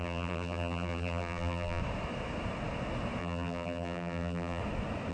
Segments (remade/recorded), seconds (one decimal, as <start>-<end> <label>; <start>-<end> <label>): 0.0-1.8 remade; 1.8-3.2 recorded; 3.2-4.6 remade; 4.6-5.1 recorded

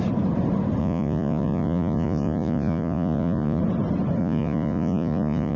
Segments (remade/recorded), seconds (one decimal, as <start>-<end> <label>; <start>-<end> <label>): 0.0-0.8 recorded; 0.8-3.6 remade; 3.6-4.2 recorded; 4.2-5.6 remade

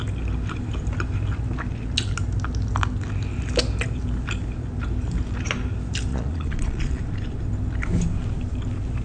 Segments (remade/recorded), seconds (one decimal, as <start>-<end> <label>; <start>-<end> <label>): 0.0-6.1 recorded; 6.1-7.0 remade; 7.0-9.0 recorded

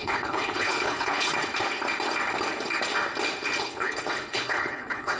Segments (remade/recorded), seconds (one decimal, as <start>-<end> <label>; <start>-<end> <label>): 0.0-1.3 remade; 1.3-3.6 recorded; 3.6-5.2 remade